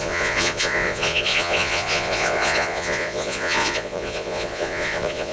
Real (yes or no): no